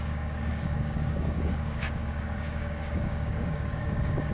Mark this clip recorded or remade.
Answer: remade